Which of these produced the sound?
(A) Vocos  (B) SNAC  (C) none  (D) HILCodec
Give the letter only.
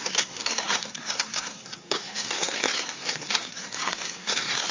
B